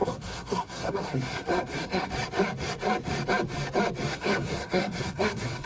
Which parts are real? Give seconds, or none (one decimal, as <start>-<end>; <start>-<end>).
2.1-4.1